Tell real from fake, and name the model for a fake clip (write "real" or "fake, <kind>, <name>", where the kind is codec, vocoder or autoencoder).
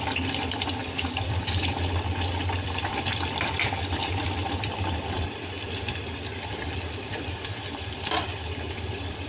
fake, vocoder, BigVGAN v2